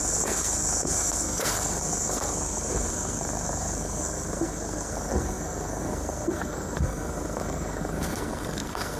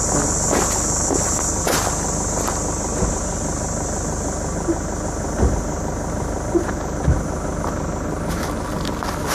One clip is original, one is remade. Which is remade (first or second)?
first